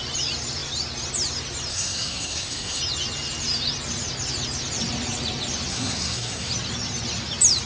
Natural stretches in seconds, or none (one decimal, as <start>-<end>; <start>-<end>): 0.0-1.7; 2.8-5.7; 6.5-7.7